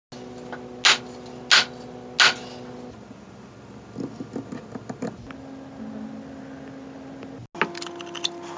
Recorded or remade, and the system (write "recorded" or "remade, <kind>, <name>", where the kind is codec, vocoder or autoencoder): recorded